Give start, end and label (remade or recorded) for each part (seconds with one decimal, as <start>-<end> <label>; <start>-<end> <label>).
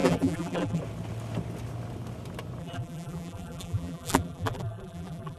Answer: 0.0-0.8 remade; 0.8-2.6 recorded; 2.6-5.4 remade